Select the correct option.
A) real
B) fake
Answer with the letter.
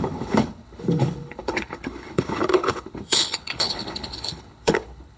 B